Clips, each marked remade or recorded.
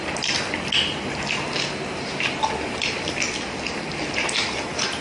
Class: recorded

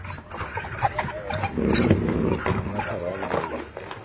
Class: recorded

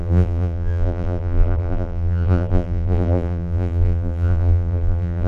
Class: remade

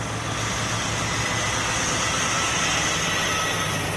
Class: recorded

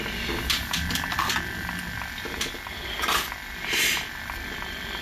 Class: recorded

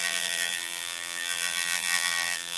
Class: remade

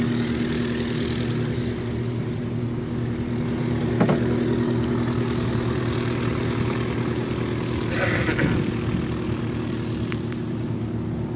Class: recorded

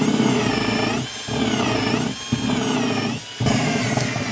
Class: recorded